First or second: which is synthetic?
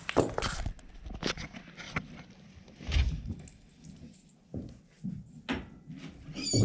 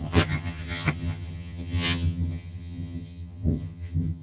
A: second